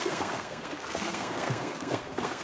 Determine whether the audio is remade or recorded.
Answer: remade